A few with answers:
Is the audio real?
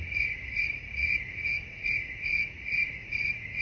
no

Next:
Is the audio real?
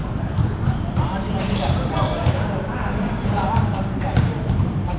no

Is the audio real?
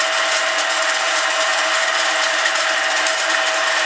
no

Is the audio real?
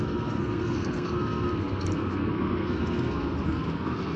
no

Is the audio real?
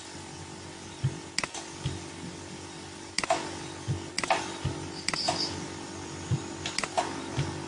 yes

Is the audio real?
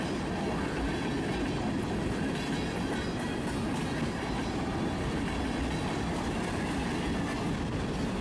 yes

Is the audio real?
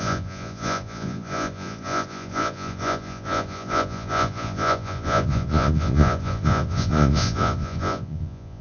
no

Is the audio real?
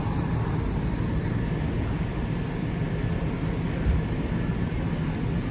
yes